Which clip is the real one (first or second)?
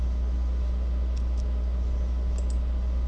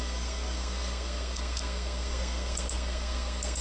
first